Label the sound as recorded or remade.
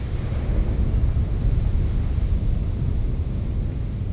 recorded